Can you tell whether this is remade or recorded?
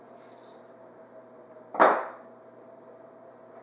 recorded